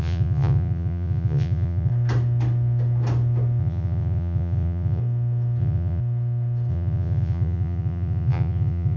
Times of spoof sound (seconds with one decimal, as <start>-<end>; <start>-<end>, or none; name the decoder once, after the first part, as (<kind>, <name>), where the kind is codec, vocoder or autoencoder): 0.0-1.9 (vocoder, Vocos); 3.6-5.0; 5.6-6.0; 6.7-9.0